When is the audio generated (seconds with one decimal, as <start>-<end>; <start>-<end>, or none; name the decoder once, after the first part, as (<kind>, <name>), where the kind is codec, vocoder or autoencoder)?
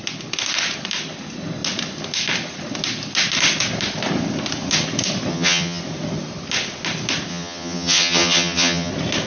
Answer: 5.3-5.8 (vocoder, HiFi-GAN); 7.3-8.9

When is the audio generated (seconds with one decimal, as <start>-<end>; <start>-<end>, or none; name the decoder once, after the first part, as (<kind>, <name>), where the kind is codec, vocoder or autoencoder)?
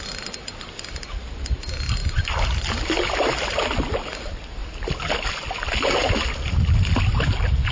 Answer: none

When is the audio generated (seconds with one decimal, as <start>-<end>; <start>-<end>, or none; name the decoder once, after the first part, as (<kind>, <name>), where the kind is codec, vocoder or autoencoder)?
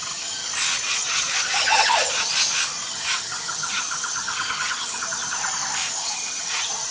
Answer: 0.0-0.4 (vocoder, HiFi-GAN); 0.9-2.3; 2.9-5.4; 5.9-6.9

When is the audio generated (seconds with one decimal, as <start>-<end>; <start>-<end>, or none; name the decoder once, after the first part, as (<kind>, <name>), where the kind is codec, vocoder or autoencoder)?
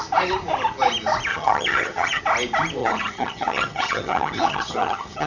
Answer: 1.3-2.2 (vocoder, HiFi-GAN); 2.8-5.3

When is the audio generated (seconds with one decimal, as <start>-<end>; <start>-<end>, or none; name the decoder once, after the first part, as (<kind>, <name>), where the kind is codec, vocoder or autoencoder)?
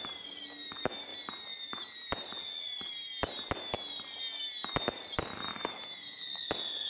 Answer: none